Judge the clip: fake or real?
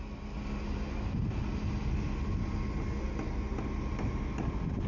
real